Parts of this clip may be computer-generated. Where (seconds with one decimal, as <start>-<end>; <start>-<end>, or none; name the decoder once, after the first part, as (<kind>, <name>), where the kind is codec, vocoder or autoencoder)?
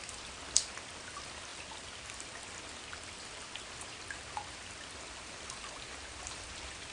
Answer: none